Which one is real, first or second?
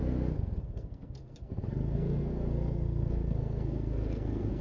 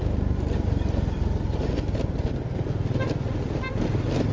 second